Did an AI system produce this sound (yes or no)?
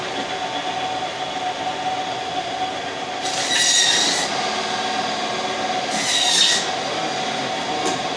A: no